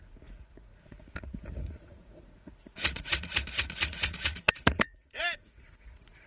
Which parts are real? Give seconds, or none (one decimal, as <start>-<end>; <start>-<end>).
none